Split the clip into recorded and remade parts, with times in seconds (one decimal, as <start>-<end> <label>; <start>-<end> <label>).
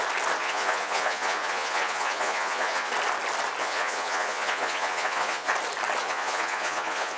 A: 0.0-0.4 recorded; 0.4-2.9 remade; 2.9-3.6 recorded; 3.6-5.5 remade; 5.5-6.0 recorded; 6.0-7.2 remade